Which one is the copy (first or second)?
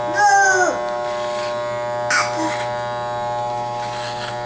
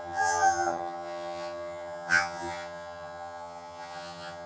second